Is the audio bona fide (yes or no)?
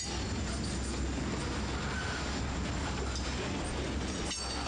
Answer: yes